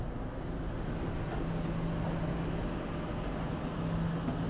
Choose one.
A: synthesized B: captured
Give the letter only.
B